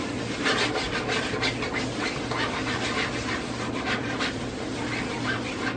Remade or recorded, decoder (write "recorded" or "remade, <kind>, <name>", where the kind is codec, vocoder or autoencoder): recorded